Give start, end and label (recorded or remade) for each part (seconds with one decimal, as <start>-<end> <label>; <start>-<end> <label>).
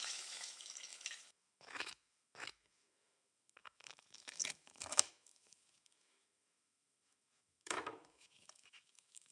0.0-9.3 remade